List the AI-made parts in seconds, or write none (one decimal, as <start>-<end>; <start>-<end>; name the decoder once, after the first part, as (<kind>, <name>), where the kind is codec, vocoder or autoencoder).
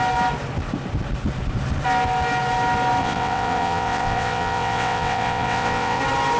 3.0-6.0 (vocoder, WaveNeXt)